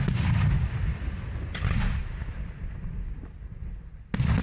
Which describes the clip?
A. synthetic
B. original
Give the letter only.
B